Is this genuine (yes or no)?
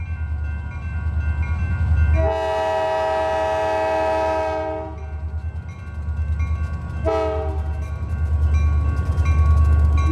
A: yes